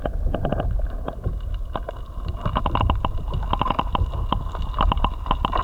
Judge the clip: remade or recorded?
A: recorded